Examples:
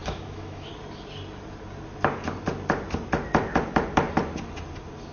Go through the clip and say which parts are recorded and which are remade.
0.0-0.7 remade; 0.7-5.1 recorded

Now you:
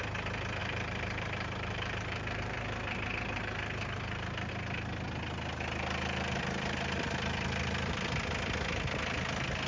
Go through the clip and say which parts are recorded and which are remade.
0.0-0.6 recorded; 0.6-4.5 remade; 4.5-9.7 recorded

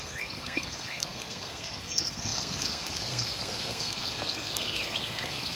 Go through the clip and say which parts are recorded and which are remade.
0.0-5.6 remade

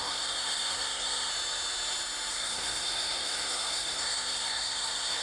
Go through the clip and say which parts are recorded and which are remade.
0.0-1.3 remade; 1.3-2.3 recorded; 2.3-5.2 remade

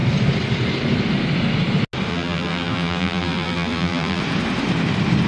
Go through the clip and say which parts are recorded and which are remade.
0.0-2.1 recorded; 2.1-4.2 remade; 4.2-5.3 recorded